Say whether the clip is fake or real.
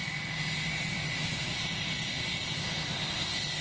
real